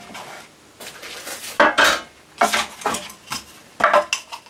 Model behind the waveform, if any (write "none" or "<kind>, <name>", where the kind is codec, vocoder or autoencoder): none